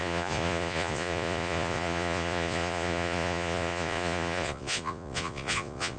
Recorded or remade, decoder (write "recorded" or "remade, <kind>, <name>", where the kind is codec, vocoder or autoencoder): remade, vocoder, Vocos